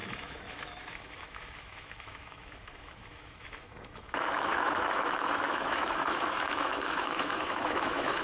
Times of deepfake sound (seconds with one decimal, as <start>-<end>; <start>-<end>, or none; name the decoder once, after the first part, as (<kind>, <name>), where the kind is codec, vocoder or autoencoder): 0.0-8.2 (autoencoder, DAC-VAE)